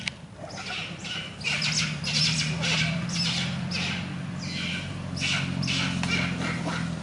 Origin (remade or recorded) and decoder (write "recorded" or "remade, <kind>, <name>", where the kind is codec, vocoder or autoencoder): recorded